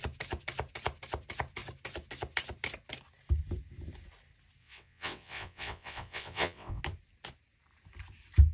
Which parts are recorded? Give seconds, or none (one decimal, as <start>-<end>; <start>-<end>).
0.0-4.6; 6.8-8.5